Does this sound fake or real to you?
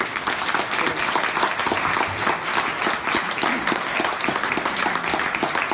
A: real